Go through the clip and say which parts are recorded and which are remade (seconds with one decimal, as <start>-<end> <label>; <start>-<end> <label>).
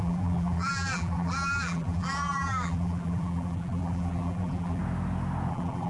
0.0-4.8 remade; 4.8-5.5 recorded; 5.5-5.9 remade